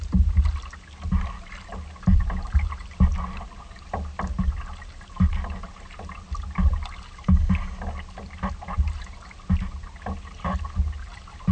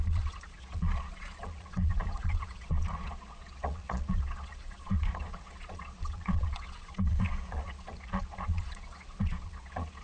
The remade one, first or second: second